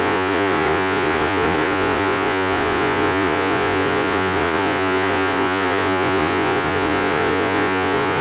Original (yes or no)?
no